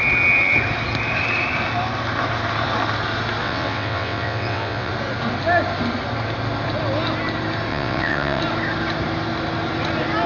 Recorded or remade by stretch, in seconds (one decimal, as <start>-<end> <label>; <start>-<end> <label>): 0.0-3.4 recorded; 3.4-4.9 remade; 4.9-7.7 recorded; 7.7-8.4 remade; 8.4-10.3 recorded